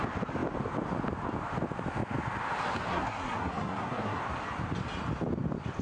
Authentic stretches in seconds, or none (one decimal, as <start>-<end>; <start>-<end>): 0.0-2.9; 4.2-5.8